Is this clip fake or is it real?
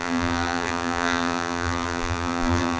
fake